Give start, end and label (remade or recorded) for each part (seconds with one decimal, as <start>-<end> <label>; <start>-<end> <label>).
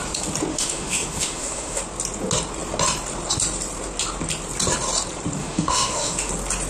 0.0-0.5 recorded; 0.5-1.8 remade; 1.8-5.4 recorded; 5.4-6.3 remade; 6.3-6.7 recorded